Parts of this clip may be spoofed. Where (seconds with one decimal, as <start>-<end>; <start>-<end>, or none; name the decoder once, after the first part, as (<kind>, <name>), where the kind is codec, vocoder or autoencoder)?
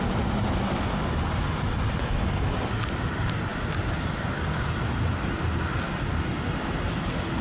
none